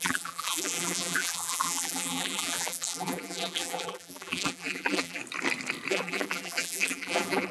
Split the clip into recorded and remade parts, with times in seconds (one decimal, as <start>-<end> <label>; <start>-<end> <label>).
0.0-5.2 remade; 5.2-5.9 recorded; 5.9-7.5 remade